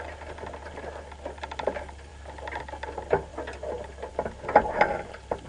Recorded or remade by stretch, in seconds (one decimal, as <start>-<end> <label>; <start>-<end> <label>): 0.0-5.5 recorded